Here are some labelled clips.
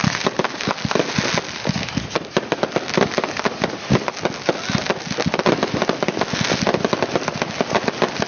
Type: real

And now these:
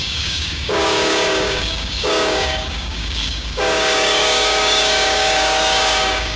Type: fake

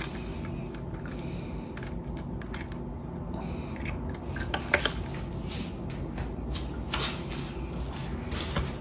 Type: real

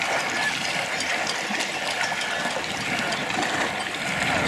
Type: real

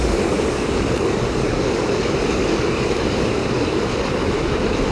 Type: fake